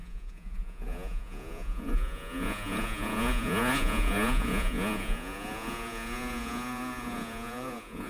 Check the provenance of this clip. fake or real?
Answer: fake